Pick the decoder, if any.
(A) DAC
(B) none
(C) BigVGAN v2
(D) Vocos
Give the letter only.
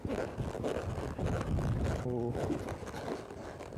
B